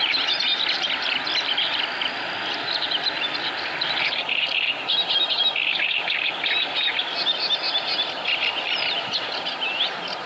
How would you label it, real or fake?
fake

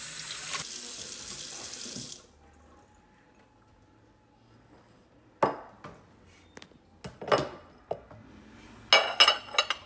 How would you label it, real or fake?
real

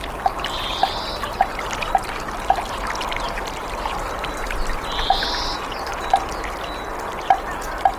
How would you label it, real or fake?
real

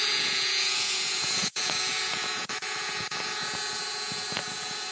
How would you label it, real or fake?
fake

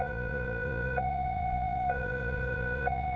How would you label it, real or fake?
fake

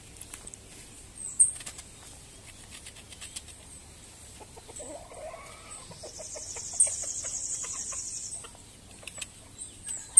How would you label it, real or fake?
real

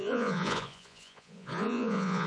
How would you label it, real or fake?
fake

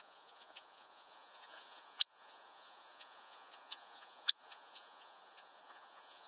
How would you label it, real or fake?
fake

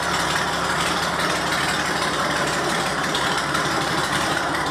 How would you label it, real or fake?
fake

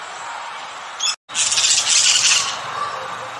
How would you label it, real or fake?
real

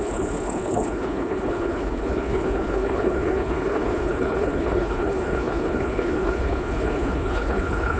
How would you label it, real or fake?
fake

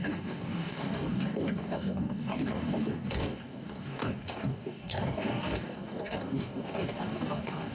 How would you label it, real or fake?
fake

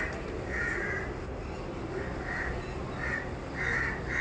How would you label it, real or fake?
real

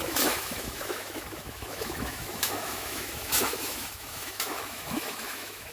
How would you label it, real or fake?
fake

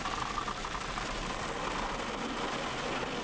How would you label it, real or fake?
real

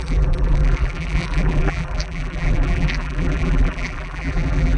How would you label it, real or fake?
fake